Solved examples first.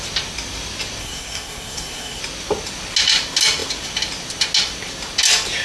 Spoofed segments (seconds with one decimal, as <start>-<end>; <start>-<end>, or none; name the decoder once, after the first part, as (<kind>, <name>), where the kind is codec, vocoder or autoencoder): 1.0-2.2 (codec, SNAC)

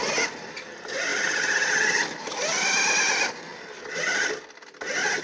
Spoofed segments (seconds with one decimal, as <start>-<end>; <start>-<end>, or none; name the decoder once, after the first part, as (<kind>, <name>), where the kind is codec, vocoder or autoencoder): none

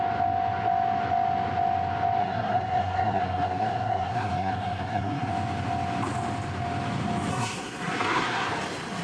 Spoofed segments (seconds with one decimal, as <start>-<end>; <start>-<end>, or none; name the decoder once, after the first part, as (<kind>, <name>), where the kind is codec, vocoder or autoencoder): 2.2-5.3 (codec, SNAC); 7.3-8.5

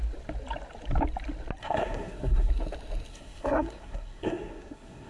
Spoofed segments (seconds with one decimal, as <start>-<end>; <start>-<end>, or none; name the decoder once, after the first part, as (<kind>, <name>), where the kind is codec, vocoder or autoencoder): 1.6-2.5 (codec, SNAC); 3.1-5.1

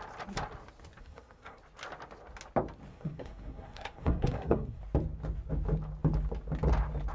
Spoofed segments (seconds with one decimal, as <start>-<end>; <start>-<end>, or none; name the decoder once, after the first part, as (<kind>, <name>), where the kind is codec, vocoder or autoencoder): 1.0-1.6 (codec, SNAC); 2.9-4.8